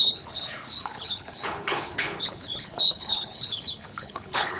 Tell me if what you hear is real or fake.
fake